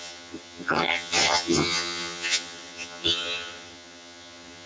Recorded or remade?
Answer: remade